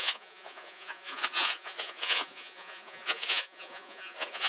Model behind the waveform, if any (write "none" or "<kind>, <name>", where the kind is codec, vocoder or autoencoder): vocoder, Vocos